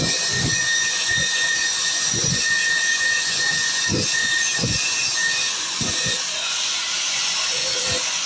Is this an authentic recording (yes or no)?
no